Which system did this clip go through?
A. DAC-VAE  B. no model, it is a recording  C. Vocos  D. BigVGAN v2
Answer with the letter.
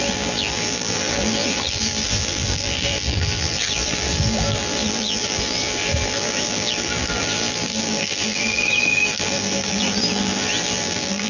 D